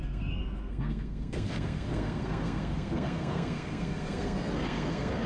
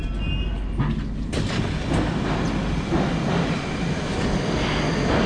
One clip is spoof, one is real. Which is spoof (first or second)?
first